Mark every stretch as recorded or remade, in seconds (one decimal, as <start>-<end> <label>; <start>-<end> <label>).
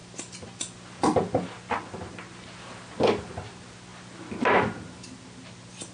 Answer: 0.0-5.9 recorded